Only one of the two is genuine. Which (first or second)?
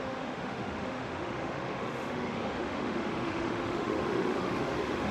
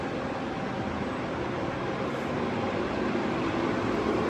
second